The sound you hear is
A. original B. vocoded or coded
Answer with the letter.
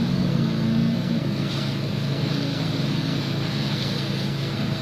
B